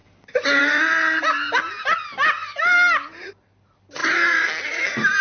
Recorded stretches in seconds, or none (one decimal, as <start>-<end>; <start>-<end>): 0.0-2.4; 3.1-5.2